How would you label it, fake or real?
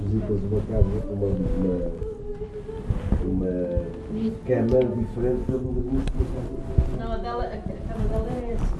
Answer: real